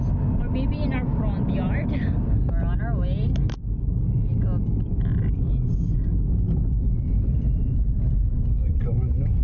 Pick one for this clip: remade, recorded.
recorded